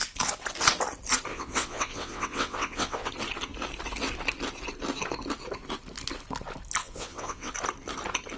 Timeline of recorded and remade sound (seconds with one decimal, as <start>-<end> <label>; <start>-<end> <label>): 0.0-1.3 recorded; 1.3-3.1 remade; 3.1-6.8 recorded; 6.8-7.5 remade; 7.5-8.4 recorded